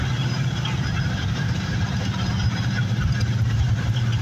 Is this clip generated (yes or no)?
yes